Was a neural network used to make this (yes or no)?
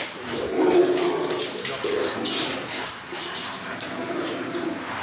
no